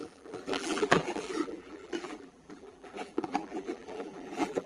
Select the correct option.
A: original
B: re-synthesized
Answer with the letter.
B